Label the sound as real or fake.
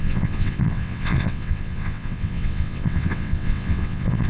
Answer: fake